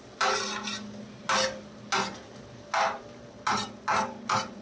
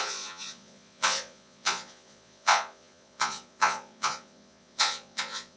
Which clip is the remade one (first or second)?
second